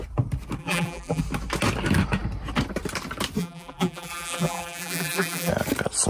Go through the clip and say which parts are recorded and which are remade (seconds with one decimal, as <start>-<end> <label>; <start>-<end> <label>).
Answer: 0.0-0.6 recorded; 0.6-1.2 remade; 1.2-3.4 recorded; 3.4-5.5 remade; 5.5-6.1 recorded